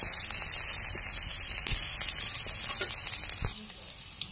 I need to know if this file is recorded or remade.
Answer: recorded